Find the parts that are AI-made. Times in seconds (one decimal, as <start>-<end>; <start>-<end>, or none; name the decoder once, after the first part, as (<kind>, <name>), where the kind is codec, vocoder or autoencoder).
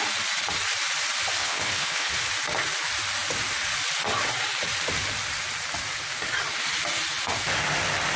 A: 1.4-2.1 (codec, HILCodec)